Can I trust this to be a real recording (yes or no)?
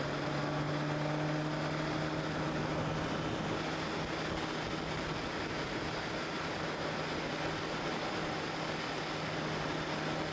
yes